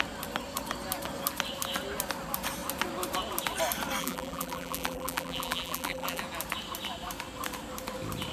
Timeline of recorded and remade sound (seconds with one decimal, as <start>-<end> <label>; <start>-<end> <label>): 0.0-4.0 recorded; 4.0-6.2 remade; 6.2-8.3 recorded